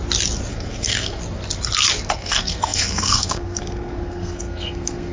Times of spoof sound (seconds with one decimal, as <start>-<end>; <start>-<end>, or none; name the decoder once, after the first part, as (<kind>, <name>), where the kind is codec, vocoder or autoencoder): 0.5-1.2 (codec, SNAC); 2.1-5.1